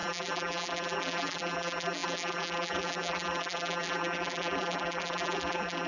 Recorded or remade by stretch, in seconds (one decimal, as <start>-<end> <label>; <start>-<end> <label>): 0.0-5.9 remade